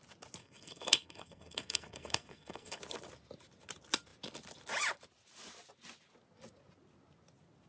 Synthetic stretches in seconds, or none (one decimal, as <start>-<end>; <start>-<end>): 0.4-2.8